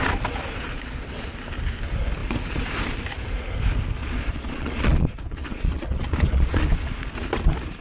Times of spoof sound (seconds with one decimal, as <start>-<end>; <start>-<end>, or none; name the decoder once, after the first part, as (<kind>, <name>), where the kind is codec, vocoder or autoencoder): 4.0-6.7 (vocoder, Vocos)